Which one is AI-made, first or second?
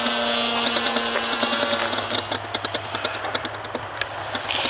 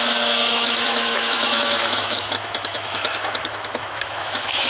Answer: second